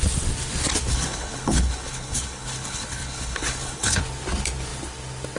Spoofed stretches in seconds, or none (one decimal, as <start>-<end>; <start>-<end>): 0.9-4.0